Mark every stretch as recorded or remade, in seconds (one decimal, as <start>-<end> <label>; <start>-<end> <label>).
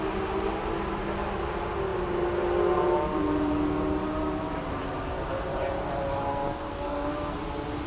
0.0-6.3 recorded; 6.3-7.4 remade; 7.4-7.9 recorded